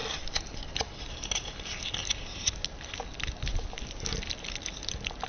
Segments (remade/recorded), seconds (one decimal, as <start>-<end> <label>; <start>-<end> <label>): 0.0-5.3 recorded